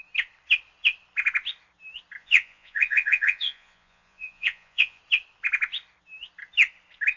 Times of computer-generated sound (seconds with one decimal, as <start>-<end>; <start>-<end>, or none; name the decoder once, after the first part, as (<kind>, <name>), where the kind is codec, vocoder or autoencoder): 2.2-5.0 (vocoder, Vocos)